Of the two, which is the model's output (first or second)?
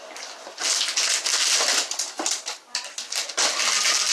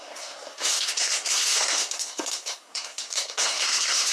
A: second